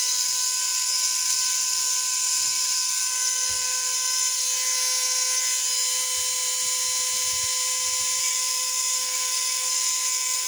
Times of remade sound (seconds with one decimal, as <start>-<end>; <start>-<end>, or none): 0.0-4.4; 8.2-10.5

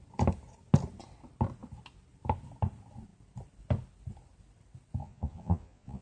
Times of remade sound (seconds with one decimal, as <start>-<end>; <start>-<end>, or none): 5.0-6.0

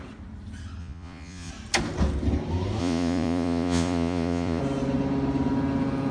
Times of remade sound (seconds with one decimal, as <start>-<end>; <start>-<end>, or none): 0.8-1.5; 2.8-4.6